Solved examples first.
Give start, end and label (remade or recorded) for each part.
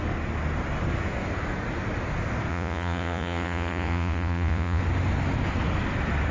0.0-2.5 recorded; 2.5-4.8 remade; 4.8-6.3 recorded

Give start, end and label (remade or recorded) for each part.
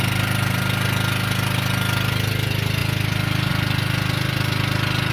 0.0-5.1 recorded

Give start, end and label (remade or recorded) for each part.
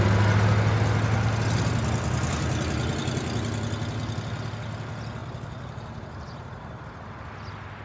0.0-5.2 recorded; 5.2-7.2 remade; 7.2-7.8 recorded